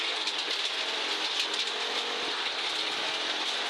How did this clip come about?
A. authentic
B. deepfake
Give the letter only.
A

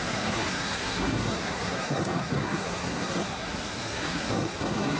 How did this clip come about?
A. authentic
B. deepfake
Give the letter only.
B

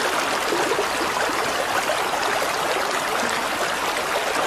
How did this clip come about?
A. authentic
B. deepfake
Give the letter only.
A